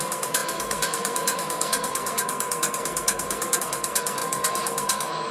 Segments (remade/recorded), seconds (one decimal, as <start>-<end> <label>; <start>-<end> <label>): 0.0-5.3 remade